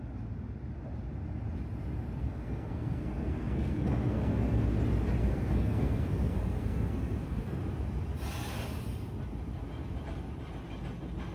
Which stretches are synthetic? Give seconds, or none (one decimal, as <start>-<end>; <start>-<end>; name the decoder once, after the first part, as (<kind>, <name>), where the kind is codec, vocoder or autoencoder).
2.2-4.8 (codec, SNAC); 5.2-7.6